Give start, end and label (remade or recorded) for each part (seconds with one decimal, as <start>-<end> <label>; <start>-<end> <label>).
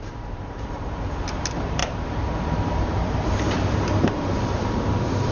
0.0-5.3 remade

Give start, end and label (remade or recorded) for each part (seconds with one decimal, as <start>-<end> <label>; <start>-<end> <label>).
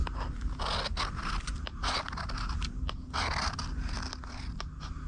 0.0-1.5 recorded; 1.5-4.6 remade; 4.6-5.1 recorded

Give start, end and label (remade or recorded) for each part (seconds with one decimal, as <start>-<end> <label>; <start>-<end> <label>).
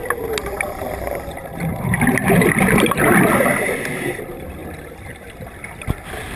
0.0-3.8 recorded; 3.8-4.6 remade; 4.6-5.6 recorded; 5.6-6.4 remade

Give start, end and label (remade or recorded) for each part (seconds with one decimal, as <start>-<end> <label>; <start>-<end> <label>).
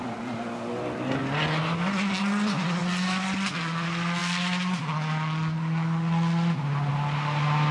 0.0-7.7 recorded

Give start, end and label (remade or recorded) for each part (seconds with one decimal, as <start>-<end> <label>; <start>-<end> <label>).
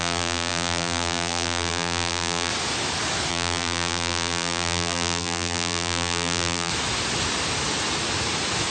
0.0-2.5 remade; 2.5-3.3 recorded; 3.3-6.7 remade; 6.7-8.7 recorded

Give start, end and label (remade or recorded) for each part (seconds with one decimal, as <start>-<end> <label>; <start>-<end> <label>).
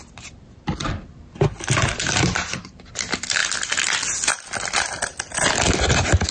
0.0-2.0 recorded; 2.0-2.9 remade; 2.9-6.3 recorded